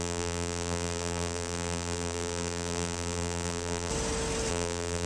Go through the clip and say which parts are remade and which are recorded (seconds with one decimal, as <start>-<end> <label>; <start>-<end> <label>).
0.0-3.9 remade; 3.9-4.5 recorded; 4.5-5.1 remade